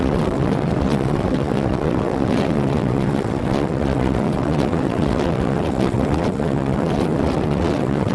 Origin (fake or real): fake